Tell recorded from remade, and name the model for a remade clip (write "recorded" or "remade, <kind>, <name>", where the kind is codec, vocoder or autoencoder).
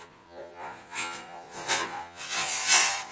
remade, vocoder, Vocos